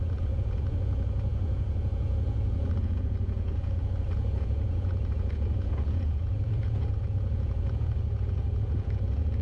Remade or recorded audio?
remade